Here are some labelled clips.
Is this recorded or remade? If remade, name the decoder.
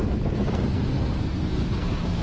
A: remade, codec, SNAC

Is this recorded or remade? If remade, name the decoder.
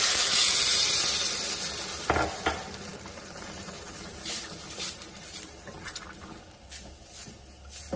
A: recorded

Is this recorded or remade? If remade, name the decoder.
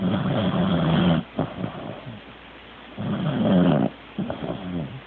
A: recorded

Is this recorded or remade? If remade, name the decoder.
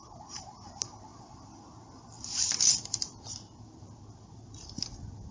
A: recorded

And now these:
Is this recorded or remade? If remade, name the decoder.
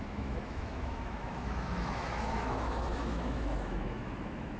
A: remade, autoencoder, DAC-VAE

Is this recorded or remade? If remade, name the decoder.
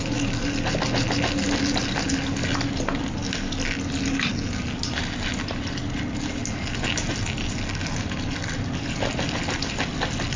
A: recorded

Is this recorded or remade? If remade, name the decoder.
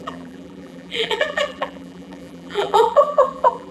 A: remade, vocoder, BigVGAN v2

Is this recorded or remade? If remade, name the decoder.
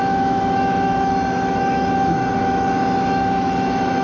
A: remade, autoencoder, DAC-VAE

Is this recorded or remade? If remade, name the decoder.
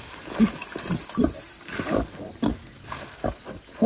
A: recorded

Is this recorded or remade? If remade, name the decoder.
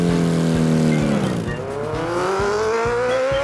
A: recorded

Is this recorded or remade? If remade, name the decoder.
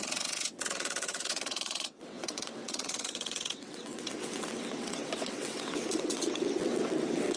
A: remade, vocoder, WaveNeXt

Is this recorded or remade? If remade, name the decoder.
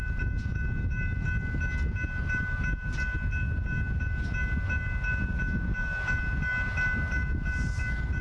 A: recorded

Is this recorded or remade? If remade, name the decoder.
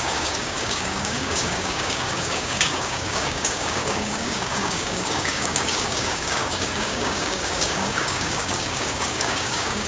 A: remade, codec, DAC